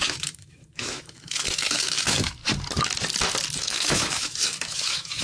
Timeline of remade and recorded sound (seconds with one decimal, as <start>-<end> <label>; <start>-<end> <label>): 0.0-2.4 remade; 2.4-3.6 recorded; 3.6-5.2 remade